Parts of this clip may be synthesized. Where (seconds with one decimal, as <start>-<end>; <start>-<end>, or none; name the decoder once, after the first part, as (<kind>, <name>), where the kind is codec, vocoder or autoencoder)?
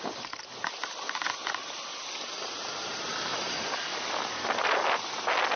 none